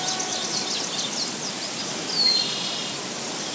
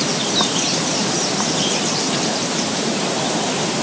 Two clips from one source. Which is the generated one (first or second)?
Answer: second